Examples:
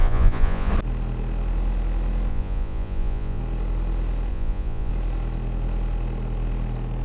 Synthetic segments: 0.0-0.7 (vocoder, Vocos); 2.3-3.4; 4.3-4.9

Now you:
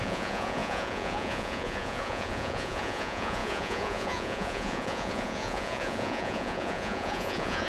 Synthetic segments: 0.0-7.7 (vocoder, Vocos)

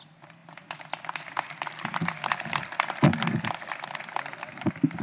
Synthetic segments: none

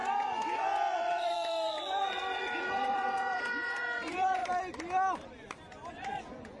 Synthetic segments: 0.0-4.4 (vocoder, Vocos); 5.9-6.6

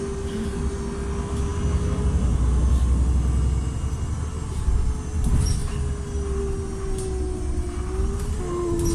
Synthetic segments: none

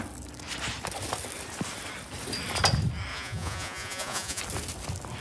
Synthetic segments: 3.1-4.4 (vocoder, Vocos)

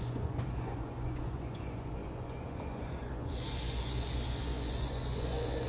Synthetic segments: 0.0-5.7 (vocoder, Vocos)